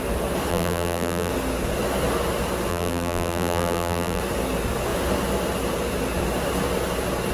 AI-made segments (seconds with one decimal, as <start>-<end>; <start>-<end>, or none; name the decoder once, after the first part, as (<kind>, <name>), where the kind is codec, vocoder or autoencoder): 0.5-1.3 (vocoder, BigVGAN v2); 2.7-4.2